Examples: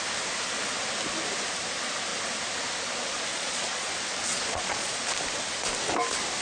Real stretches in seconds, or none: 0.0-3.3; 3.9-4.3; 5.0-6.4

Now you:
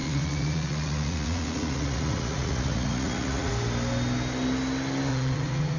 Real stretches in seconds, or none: 3.5-5.1

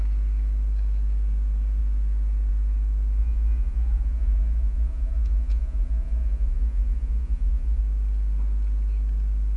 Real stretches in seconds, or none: 0.0-3.2; 7.8-9.6

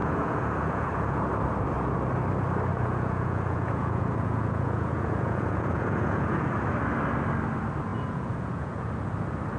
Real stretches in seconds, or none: 1.2-2.7; 6.5-7.9; 8.9-9.6

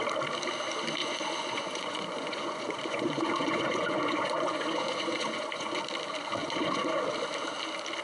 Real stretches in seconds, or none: 0.0-1.0; 5.8-6.4; 7.0-8.0

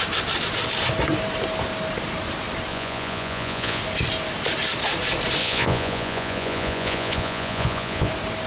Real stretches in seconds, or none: 0.0-2.7; 3.8-5.4; 8.1-8.5

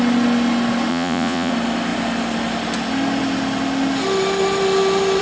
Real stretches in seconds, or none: 0.0-0.9; 1.5-5.2